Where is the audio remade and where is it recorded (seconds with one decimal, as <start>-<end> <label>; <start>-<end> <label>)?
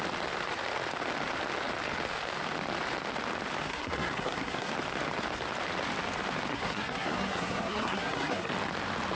0.0-3.7 recorded; 3.7-4.7 remade; 4.7-6.5 recorded; 6.5-8.5 remade; 8.5-9.2 recorded